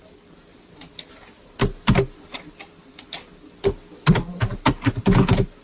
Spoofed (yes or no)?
no